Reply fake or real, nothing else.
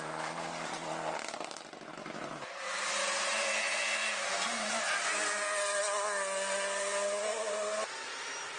real